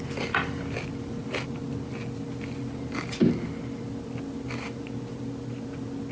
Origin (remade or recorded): recorded